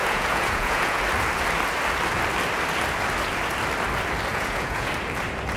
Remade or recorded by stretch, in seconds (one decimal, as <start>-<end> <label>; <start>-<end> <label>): 0.0-1.0 remade; 1.0-4.3 recorded; 4.3-4.9 remade; 4.9-5.6 recorded